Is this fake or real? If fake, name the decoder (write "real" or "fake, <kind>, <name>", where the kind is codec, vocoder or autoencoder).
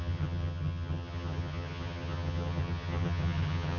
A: fake, vocoder, HiFi-GAN